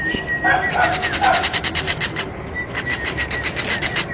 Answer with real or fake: real